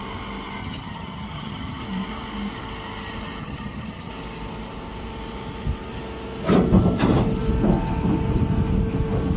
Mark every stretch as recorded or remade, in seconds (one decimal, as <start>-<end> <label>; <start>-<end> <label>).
0.0-0.6 recorded; 0.6-1.8 remade; 1.8-3.4 recorded; 3.4-4.1 remade; 4.1-9.4 recorded